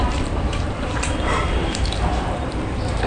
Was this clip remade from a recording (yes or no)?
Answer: yes